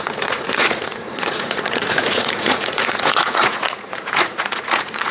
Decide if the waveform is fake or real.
fake